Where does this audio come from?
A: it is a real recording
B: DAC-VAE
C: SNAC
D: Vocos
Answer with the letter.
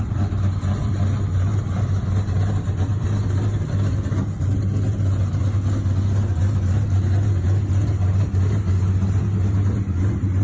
A